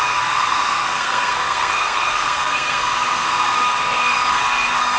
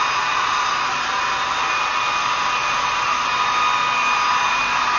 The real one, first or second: second